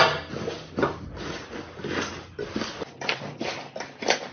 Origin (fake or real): real